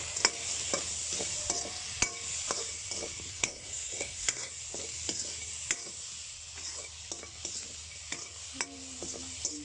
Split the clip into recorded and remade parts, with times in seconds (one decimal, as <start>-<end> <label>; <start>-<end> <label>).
0.0-3.3 recorded; 3.3-4.5 remade; 4.5-9.6 recorded